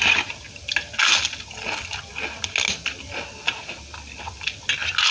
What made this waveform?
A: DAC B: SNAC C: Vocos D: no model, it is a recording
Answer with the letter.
D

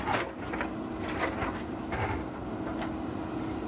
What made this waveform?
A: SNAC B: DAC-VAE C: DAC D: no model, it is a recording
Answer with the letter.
D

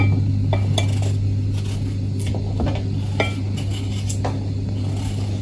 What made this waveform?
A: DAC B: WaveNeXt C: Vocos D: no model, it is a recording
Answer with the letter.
D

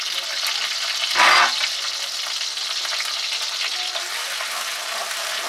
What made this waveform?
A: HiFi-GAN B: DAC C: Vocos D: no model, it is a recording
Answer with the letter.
D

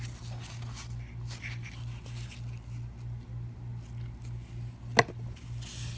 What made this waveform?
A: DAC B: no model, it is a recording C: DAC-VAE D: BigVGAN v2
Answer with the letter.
B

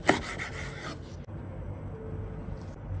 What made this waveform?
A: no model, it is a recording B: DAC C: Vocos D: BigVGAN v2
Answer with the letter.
A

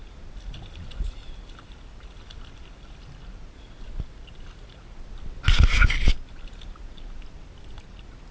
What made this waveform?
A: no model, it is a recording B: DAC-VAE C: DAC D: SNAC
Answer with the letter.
A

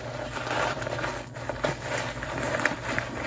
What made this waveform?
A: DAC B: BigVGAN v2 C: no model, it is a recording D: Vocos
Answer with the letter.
C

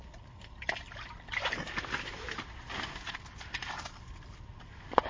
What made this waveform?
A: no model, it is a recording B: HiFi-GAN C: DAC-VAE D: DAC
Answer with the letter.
A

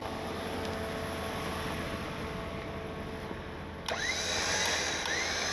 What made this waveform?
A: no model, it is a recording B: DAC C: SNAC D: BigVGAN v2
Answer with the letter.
A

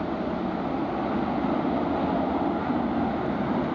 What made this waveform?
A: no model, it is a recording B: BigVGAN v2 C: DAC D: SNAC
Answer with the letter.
A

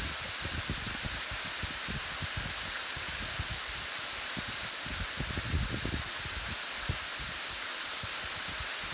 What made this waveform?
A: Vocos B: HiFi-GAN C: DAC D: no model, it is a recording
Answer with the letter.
D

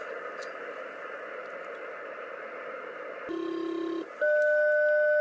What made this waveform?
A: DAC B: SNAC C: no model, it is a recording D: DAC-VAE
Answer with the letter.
C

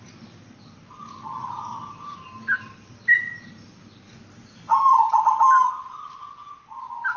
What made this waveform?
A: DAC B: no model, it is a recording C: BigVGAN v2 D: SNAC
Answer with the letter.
B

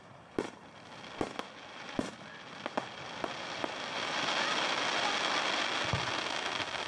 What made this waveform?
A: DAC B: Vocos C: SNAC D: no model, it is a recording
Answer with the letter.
D